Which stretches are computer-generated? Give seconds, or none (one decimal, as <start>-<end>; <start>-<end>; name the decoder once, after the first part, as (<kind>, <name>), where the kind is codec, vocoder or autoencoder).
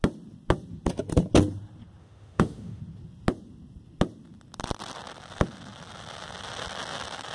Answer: 2.0-2.8 (autoencoder, DAC-VAE)